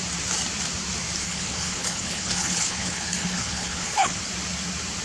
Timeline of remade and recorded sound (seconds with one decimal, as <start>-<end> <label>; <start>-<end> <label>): 0.0-1.2 recorded; 1.2-4.2 remade; 4.2-5.0 recorded